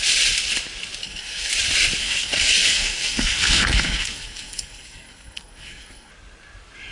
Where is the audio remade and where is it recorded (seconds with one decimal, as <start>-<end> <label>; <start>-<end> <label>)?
0.0-1.0 recorded; 1.0-1.5 remade; 1.5-2.0 recorded; 2.0-6.1 remade; 6.1-6.9 recorded